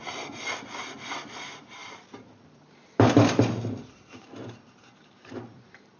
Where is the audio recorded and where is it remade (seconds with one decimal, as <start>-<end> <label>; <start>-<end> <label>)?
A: 0.0-6.0 remade